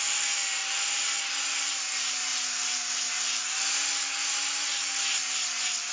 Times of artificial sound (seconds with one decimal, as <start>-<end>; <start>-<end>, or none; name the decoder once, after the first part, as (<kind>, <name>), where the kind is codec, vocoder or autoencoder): none